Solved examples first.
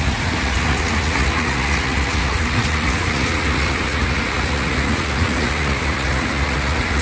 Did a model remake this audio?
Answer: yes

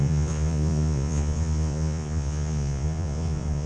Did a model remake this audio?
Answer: yes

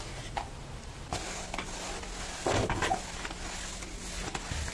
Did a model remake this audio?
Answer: no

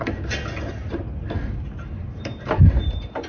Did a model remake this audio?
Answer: no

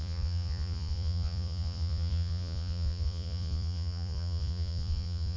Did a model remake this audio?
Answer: yes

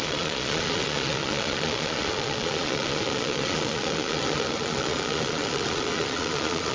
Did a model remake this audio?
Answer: yes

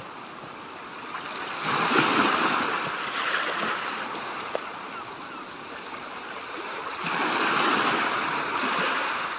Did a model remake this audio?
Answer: no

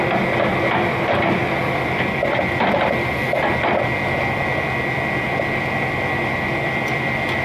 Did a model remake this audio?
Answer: no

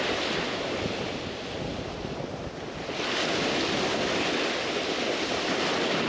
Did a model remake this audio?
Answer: no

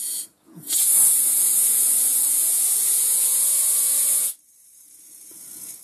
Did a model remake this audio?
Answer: yes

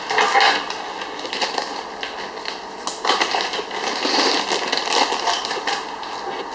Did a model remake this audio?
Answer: no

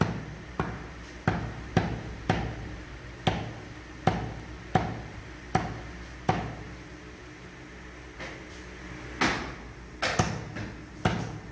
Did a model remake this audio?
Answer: no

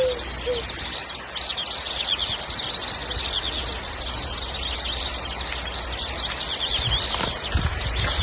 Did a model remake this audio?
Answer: no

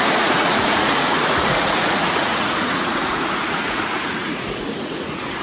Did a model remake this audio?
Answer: yes